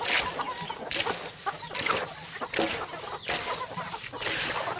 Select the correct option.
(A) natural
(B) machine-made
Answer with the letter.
A